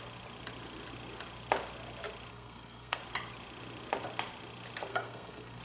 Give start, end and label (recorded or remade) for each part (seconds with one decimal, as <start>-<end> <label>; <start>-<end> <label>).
0.0-2.3 recorded; 2.3-3.0 remade; 3.0-4.9 recorded; 4.9-5.6 remade